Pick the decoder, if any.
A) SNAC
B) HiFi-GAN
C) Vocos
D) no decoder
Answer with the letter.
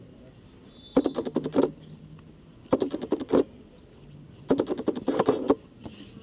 D